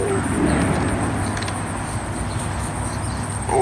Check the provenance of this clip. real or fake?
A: real